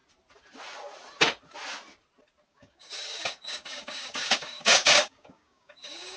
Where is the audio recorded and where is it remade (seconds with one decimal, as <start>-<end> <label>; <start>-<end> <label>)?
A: 0.0-2.5 recorded; 2.5-6.2 remade